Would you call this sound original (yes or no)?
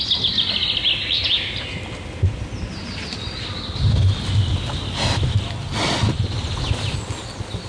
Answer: yes